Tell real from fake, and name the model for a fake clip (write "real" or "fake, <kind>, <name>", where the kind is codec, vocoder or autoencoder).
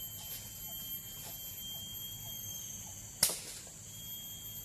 real